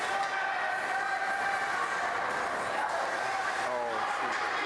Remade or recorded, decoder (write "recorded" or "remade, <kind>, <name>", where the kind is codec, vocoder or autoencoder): recorded